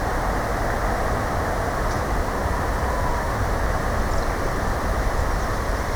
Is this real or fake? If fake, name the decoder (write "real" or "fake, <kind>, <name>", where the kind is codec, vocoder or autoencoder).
real